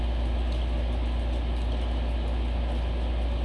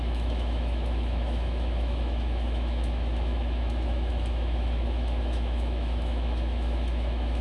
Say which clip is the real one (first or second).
first